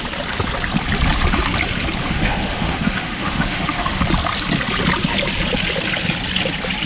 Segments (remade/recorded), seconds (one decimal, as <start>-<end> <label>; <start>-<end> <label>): 0.0-2.0 recorded; 2.0-4.0 remade; 4.0-6.9 recorded